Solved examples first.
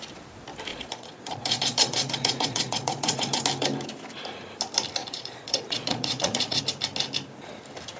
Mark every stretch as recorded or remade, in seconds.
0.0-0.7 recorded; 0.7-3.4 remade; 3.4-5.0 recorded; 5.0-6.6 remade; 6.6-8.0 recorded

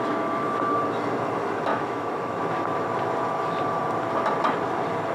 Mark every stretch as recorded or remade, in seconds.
0.0-1.7 recorded; 1.7-2.4 remade; 2.4-5.1 recorded

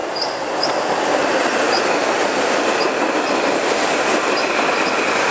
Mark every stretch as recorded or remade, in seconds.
0.0-5.3 recorded

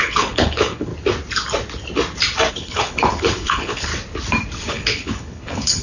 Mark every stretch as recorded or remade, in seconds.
0.0-0.9 remade; 0.9-2.5 recorded; 2.5-3.9 remade; 3.9-4.7 recorded; 4.7-5.8 remade

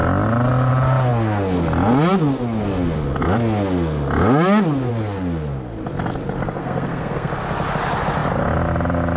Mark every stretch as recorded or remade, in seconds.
0.0-6.6 recorded; 6.6-7.3 remade; 7.3-9.2 recorded

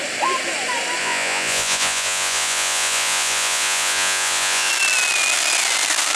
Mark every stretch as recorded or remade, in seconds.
0.0-1.0 recorded; 1.0-4.7 remade; 4.7-6.2 recorded

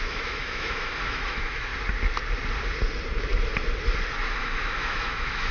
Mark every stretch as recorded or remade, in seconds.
0.0-1.7 remade; 1.7-4.3 recorded; 4.3-5.5 remade

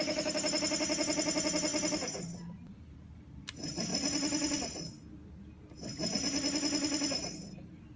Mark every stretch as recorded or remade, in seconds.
0.0-8.0 recorded